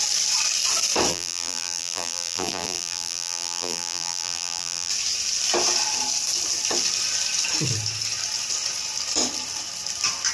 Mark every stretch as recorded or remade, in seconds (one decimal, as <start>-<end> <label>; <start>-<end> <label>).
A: 0.0-1.1 recorded; 1.1-4.9 remade; 4.9-10.3 recorded